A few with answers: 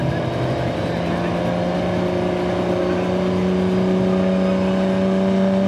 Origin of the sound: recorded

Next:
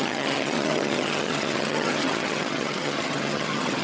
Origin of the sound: remade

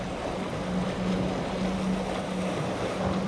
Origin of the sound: recorded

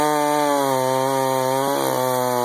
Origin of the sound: recorded